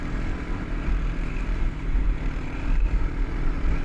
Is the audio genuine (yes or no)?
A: no